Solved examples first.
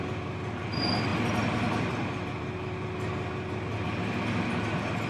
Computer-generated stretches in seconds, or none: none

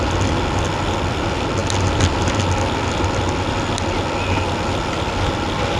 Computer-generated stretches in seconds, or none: none